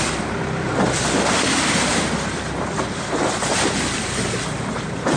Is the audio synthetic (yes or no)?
yes